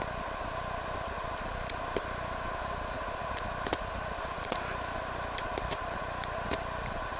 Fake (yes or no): no